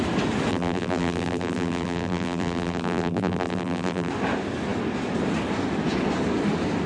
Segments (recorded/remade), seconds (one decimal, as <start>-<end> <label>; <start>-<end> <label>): 0.0-0.5 recorded; 0.5-4.1 remade; 4.1-6.9 recorded